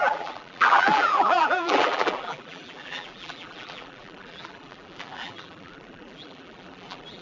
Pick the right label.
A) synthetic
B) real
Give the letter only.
A